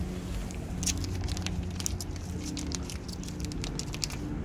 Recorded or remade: recorded